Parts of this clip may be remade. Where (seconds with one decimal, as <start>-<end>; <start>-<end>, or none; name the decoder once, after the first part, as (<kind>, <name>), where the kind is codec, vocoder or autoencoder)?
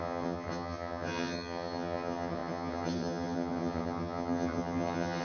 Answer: 0.0-5.2 (vocoder, HiFi-GAN)